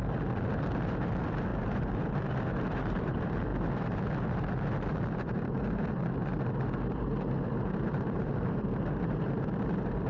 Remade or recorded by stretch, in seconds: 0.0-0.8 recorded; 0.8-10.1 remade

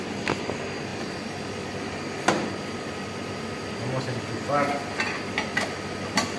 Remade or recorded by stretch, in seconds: 0.0-6.4 recorded